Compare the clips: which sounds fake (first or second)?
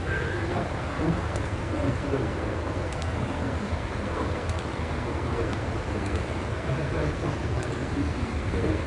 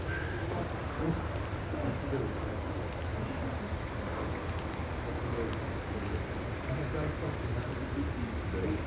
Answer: first